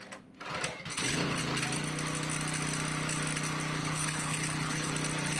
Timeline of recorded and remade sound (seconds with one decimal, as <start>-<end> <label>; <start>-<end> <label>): 0.0-0.9 recorded; 0.9-1.4 remade; 1.4-3.8 recorded; 3.8-4.9 remade; 4.9-5.4 recorded